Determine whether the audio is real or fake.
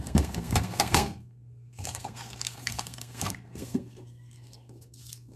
fake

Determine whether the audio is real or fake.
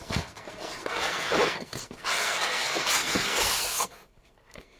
fake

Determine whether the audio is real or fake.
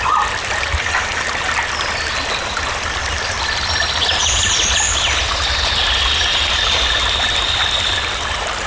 real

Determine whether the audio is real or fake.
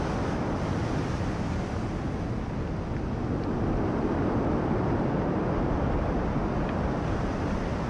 real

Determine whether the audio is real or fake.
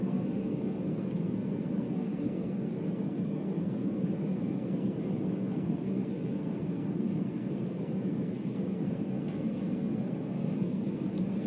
fake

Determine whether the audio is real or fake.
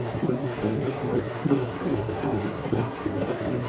fake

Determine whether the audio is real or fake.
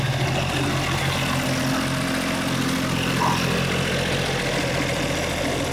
real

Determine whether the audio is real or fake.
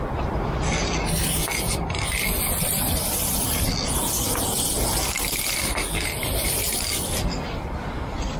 real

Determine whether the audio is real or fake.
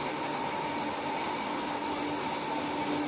real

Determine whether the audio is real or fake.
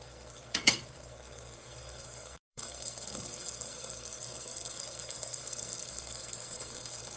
fake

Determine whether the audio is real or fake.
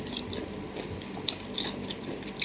real